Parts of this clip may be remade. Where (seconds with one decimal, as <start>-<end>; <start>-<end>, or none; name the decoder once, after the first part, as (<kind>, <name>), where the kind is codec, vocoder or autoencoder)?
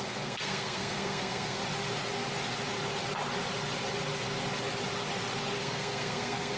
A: 0.0-1.6 (codec, SNAC); 5.6-6.6